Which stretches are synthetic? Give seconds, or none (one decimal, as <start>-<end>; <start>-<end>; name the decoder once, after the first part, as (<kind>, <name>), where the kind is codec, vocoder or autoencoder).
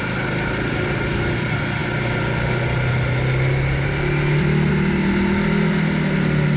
none